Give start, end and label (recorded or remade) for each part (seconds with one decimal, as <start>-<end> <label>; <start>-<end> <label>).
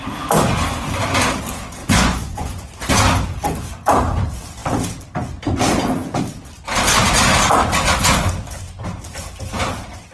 0.0-1.8 recorded; 1.8-2.7 remade; 2.7-10.1 recorded